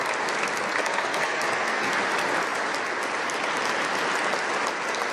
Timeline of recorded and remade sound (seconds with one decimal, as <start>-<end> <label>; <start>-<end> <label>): 0.0-0.8 recorded; 0.8-1.9 remade; 1.9-5.1 recorded